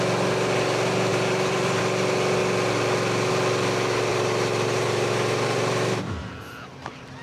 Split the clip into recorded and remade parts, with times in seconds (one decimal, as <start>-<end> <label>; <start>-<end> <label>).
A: 0.0-1.1 recorded; 1.1-1.8 remade; 1.8-4.1 recorded; 4.1-6.1 remade; 6.1-7.2 recorded